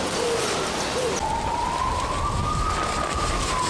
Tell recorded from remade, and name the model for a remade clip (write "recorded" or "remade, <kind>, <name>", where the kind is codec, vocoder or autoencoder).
recorded